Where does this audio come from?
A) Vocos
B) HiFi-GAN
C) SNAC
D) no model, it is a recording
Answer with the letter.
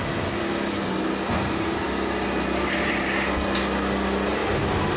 D